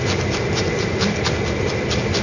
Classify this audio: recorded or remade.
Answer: recorded